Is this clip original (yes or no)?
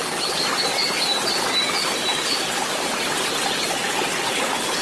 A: yes